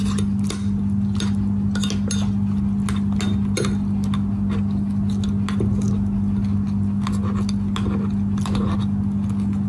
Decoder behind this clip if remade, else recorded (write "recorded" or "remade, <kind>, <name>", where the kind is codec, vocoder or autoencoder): recorded